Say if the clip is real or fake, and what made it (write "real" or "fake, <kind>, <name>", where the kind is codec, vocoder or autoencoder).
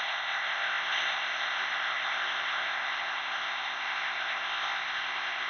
fake, codec, ZipCodec